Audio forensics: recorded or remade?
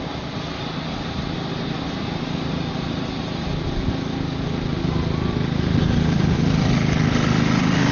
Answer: recorded